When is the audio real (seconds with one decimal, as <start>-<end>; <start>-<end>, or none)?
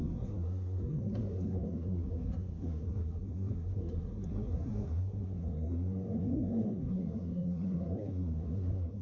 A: none